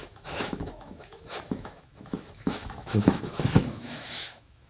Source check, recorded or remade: remade